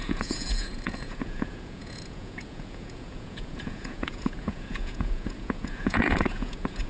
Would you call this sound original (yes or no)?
no